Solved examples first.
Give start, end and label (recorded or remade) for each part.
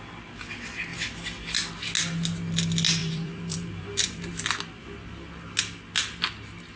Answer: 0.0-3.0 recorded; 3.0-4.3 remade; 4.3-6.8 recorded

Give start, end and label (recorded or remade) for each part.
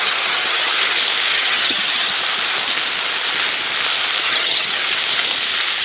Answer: 0.0-0.7 remade; 0.7-1.3 recorded; 1.3-2.1 remade; 2.1-4.2 recorded; 4.2-4.8 remade; 4.8-5.8 recorded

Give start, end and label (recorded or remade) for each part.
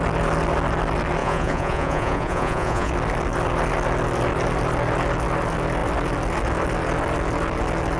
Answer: 0.0-1.2 recorded; 1.2-2.9 remade; 2.9-8.0 recorded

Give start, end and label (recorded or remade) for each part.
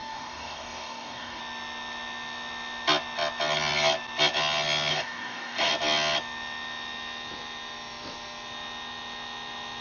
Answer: 0.0-1.4 remade; 1.4-4.9 recorded; 4.9-5.7 remade; 5.7-9.8 recorded